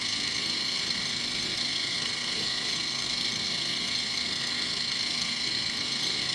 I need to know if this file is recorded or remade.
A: remade